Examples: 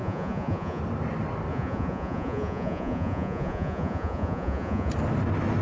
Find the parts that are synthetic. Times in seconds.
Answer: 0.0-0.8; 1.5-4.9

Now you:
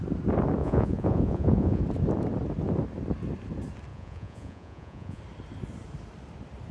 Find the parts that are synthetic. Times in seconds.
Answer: 0.6-1.8; 3.9-5.2

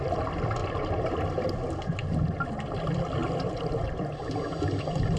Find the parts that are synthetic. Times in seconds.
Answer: none